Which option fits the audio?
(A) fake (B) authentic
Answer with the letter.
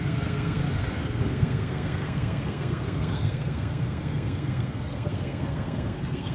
A